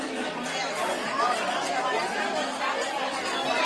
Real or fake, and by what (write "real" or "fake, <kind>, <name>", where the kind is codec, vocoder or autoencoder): real